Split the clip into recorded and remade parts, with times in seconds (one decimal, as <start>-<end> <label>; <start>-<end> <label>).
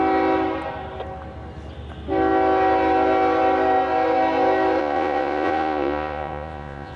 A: 0.0-4.8 recorded; 4.8-7.0 remade